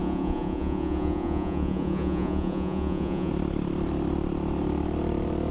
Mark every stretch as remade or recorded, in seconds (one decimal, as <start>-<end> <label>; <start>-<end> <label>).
0.0-3.3 remade; 3.3-5.5 recorded